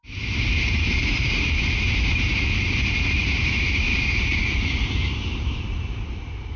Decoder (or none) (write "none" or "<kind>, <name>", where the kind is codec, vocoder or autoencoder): vocoder, BigVGAN v2